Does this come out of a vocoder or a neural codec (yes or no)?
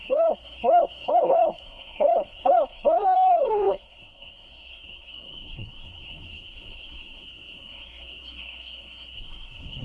yes